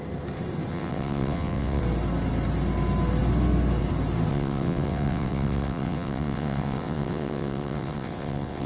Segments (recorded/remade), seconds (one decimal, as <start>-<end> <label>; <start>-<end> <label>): 0.0-0.7 recorded; 0.7-1.8 remade; 1.8-4.3 recorded; 4.3-8.7 remade